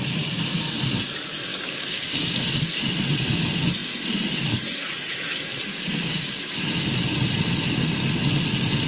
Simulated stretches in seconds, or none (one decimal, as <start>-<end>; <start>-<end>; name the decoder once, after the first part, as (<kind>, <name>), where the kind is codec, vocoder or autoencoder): 1.5-2.3 (codec, DAC); 5.7-6.6